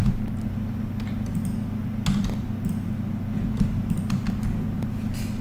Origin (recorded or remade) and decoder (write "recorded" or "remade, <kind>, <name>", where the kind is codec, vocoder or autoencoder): recorded